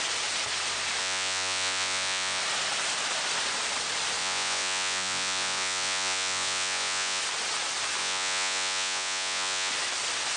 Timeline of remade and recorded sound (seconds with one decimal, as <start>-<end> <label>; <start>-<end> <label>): 0.0-1.0 recorded; 1.0-2.4 remade; 2.4-4.2 recorded; 4.2-7.2 remade; 7.2-8.0 recorded; 8.0-9.7 remade; 9.7-10.4 recorded